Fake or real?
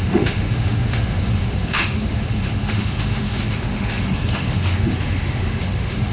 fake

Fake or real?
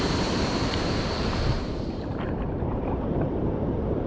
fake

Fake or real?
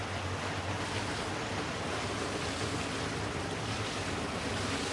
real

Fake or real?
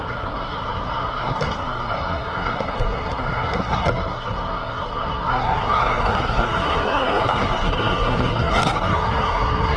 fake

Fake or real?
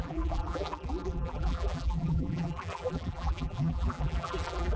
fake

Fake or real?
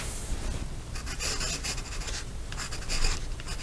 real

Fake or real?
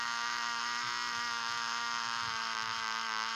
fake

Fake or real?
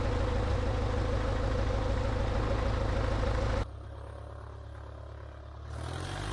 real